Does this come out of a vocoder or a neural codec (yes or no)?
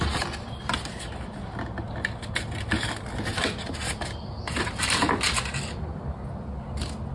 no